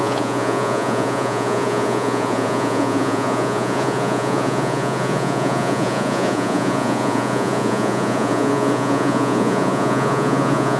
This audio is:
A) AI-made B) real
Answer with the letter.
A